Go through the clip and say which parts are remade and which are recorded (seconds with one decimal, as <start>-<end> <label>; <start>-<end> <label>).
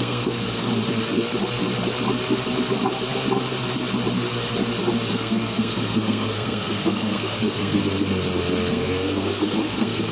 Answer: 0.0-0.7 remade; 0.7-5.1 recorded; 5.1-7.8 remade; 7.8-8.7 recorded; 8.7-10.1 remade